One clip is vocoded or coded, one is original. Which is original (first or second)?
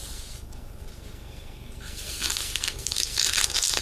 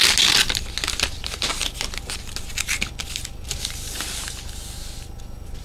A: second